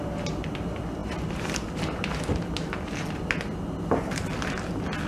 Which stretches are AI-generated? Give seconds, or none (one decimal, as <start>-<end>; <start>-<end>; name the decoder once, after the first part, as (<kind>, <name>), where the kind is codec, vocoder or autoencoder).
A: none